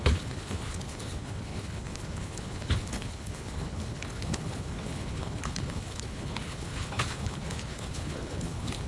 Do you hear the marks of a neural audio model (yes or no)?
yes